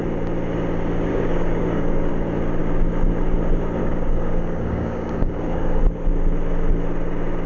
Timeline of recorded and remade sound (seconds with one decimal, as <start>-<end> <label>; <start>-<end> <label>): 0.0-1.1 recorded; 1.1-2.1 remade; 2.1-3.8 recorded; 3.8-5.8 remade; 5.8-7.5 recorded